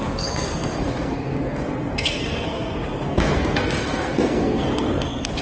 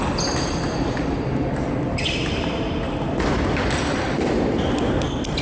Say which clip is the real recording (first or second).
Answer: second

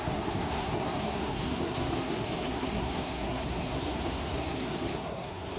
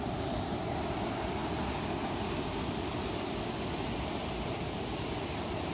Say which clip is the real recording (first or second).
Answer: second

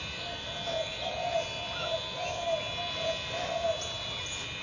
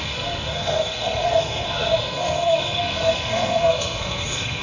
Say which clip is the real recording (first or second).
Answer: first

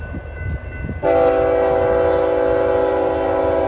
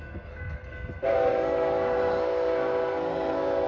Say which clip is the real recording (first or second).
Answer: first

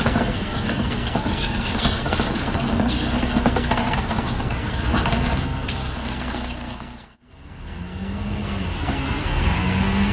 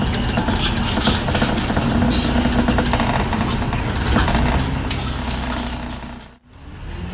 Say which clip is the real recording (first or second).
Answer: second